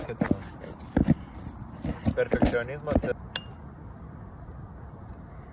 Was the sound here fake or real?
real